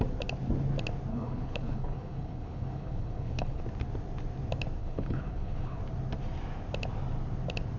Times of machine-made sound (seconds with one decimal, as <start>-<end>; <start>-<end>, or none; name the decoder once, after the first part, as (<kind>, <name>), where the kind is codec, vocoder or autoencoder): 1.1-3.6 (codec, HILCodec); 4.8-5.8